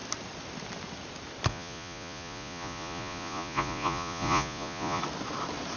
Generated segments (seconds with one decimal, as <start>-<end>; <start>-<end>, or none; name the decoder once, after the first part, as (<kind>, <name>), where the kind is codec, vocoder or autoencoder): 1.5-5.0 (vocoder, Vocos)